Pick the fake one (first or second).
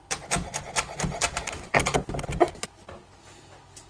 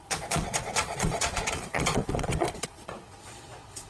second